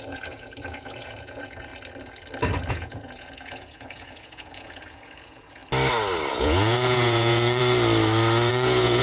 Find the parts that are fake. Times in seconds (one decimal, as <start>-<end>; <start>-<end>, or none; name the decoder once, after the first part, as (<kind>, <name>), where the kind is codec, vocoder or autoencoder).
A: 0.0-1.7 (vocoder, Vocos); 2.7-5.6; 6.3-7.6; 8.5-9.0